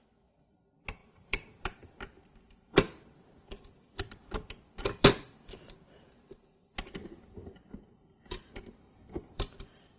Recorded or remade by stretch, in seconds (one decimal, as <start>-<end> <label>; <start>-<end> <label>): 0.0-10.0 remade

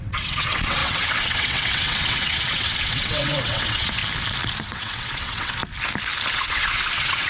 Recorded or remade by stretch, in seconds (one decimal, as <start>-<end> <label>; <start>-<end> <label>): 0.0-4.0 remade; 4.0-4.6 recorded; 4.6-5.6 remade; 5.6-6.3 recorded; 6.3-7.3 remade

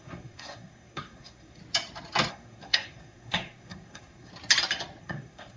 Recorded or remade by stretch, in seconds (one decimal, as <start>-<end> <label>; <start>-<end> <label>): 0.0-1.6 remade; 1.6-2.3 recorded; 2.3-4.3 remade; 4.3-5.0 recorded; 5.0-5.6 remade

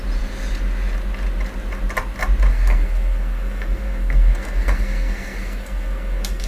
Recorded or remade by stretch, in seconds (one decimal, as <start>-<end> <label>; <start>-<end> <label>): 0.0-2.5 recorded; 2.5-6.5 remade

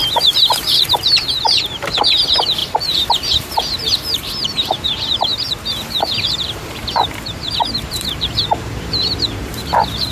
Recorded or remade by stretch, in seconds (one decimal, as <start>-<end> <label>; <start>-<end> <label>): 0.0-0.6 recorded; 0.6-10.1 remade

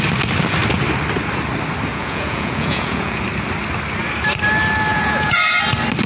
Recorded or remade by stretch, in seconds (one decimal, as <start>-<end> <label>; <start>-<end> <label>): 0.0-1.9 recorded; 1.9-3.2 remade; 3.2-4.9 recorded; 4.9-5.6 remade; 5.6-6.1 recorded